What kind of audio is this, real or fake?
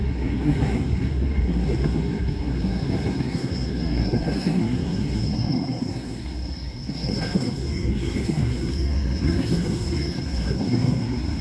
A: fake